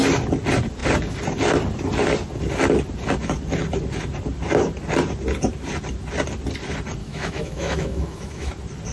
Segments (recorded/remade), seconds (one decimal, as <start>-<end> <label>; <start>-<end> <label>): 0.0-7.0 recorded; 7.0-8.5 remade; 8.5-8.9 recorded